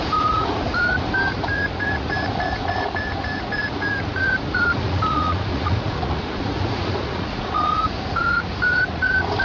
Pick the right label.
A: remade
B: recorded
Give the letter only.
A